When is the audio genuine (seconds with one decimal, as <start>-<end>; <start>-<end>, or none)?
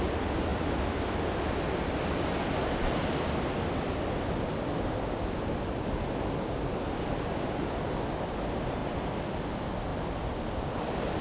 0.0-8.8; 9.5-9.9